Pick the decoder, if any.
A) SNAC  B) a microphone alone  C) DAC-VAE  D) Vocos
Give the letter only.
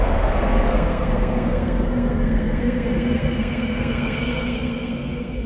A